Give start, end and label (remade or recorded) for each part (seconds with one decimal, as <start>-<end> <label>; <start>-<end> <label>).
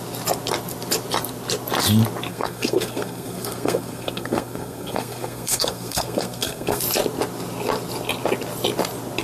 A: 0.0-2.3 recorded; 2.3-6.8 remade; 6.8-9.2 recorded